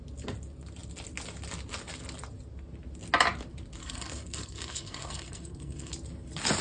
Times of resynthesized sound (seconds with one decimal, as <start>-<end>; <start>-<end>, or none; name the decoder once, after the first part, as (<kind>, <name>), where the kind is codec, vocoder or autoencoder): 3.8-5.9 (codec, SNAC)